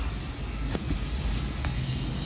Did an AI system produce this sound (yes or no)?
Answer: no